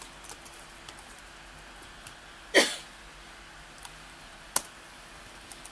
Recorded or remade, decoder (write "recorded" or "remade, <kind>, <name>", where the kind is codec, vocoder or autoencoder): recorded